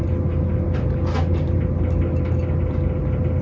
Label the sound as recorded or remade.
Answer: recorded